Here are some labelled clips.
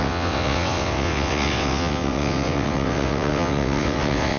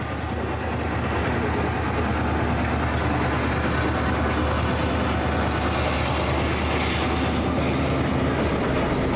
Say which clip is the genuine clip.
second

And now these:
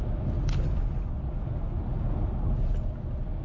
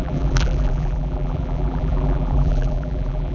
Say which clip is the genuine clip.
first